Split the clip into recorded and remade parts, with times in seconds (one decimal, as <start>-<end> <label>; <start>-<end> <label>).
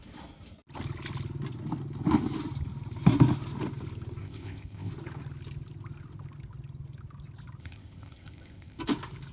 0.0-4.2 recorded; 4.2-4.9 remade; 4.9-7.6 recorded; 7.6-8.8 remade; 8.8-9.3 recorded